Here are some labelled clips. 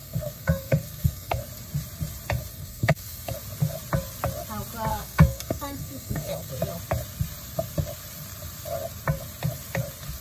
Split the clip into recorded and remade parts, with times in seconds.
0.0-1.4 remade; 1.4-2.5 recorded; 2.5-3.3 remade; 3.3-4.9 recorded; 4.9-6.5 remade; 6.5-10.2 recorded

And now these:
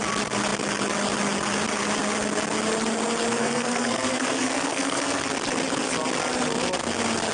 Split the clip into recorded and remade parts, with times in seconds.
0.0-3.4 recorded; 3.4-5.2 remade; 5.2-7.3 recorded

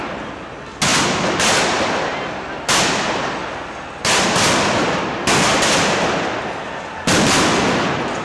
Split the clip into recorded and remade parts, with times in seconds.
0.0-8.2 recorded

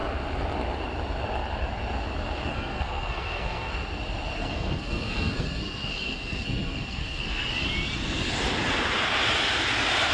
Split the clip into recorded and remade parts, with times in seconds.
0.0-2.5 recorded; 2.5-3.7 remade; 3.7-4.4 recorded; 4.4-7.5 remade; 7.5-10.1 recorded

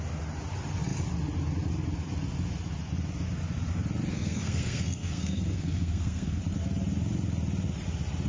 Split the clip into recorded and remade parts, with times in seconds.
0.0-4.1 recorded; 4.1-6.4 remade; 6.4-8.3 recorded

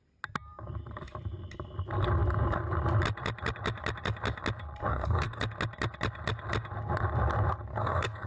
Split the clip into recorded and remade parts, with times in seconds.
0.0-4.9 recorded; 4.9-5.4 remade; 5.4-7.7 recorded; 7.7-8.3 remade

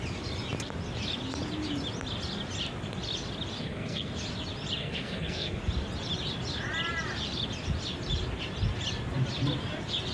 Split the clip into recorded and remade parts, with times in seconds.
0.0-3.6 recorded; 3.6-4.1 remade; 4.1-4.8 recorded; 4.8-5.6 remade; 5.6-10.1 recorded